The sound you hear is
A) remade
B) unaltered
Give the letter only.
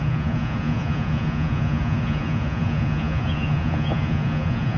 A